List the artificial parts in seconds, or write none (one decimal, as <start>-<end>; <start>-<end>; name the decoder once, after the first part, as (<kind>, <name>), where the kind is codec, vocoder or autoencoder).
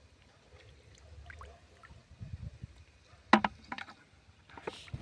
none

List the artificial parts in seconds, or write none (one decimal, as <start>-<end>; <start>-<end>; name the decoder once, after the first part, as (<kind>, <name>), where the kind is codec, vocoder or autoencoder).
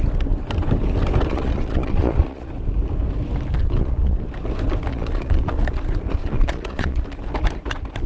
1.3-2.5 (vocoder, Vocos); 3.6-4.2; 4.9-5.6; 6.2-7.0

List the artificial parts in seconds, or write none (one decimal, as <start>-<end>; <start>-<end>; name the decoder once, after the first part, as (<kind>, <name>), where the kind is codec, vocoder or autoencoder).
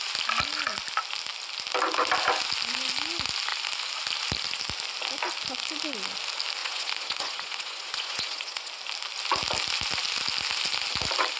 6.6-8.7 (vocoder, Vocos)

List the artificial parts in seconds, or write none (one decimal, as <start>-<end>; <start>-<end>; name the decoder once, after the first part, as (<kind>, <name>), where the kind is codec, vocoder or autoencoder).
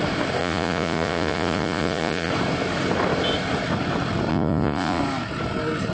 0.4-2.3 (vocoder, Vocos); 4.3-5.0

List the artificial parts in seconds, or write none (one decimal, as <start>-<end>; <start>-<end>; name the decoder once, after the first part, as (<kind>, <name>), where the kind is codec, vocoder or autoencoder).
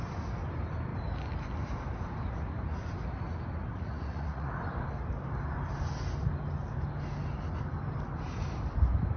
3.7-4.5 (vocoder, Vocos)